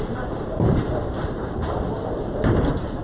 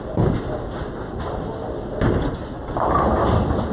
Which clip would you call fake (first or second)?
first